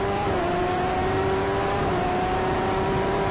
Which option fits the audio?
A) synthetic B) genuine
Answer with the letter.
A